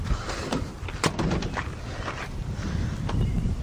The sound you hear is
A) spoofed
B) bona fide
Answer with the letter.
B